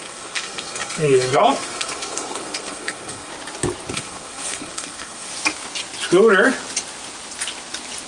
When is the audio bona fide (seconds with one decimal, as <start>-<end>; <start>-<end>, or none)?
3.3-3.9; 5.3-8.1